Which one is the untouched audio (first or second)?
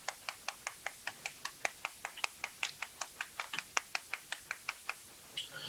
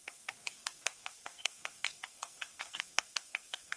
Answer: first